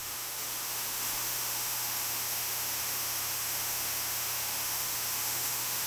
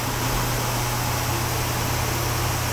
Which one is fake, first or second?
first